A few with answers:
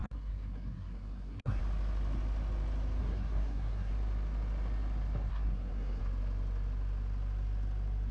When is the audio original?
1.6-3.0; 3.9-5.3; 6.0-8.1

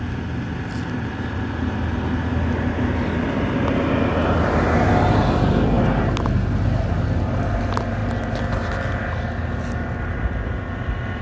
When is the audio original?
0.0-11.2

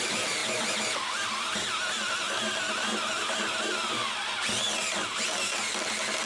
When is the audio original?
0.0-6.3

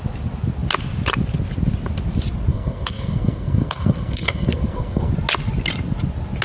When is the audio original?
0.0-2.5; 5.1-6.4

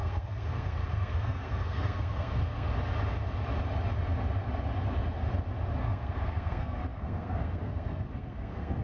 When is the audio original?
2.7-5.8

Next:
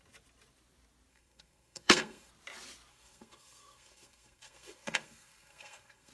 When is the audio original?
0.0-1.1; 2.3-2.9